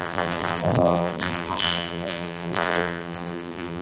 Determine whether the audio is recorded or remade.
remade